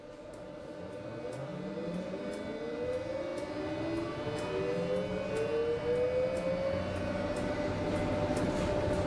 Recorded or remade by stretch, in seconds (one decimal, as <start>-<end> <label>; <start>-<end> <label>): 0.0-1.5 recorded; 1.5-2.2 remade; 2.2-9.1 recorded